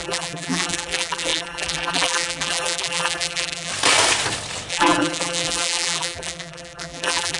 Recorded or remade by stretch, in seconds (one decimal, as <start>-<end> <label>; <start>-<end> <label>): 0.0-3.7 remade; 3.7-4.7 recorded; 4.7-7.4 remade